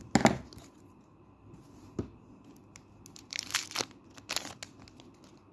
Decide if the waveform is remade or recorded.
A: recorded